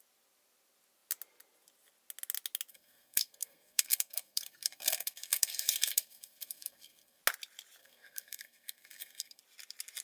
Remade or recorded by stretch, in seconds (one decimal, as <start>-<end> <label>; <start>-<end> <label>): 0.0-2.7 recorded; 2.7-7.2 remade; 7.2-7.8 recorded; 7.8-9.4 remade; 9.4-10.0 recorded